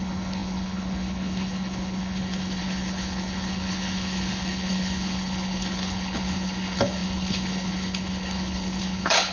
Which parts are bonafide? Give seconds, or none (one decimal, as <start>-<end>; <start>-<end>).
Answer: none